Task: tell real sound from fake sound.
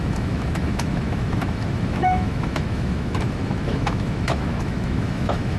fake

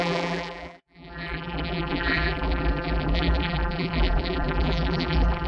fake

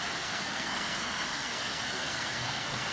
fake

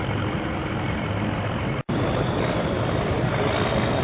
real